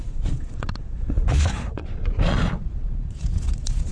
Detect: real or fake fake